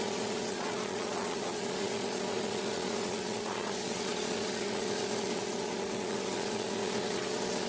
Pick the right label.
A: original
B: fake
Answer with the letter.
B